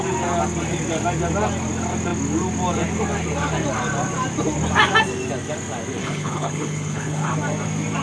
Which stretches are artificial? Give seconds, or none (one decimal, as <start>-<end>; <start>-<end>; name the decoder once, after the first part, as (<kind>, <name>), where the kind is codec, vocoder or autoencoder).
6.0-7.3 (codec, HILCodec)